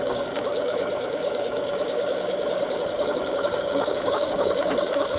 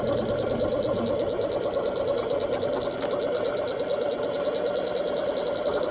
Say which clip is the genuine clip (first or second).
second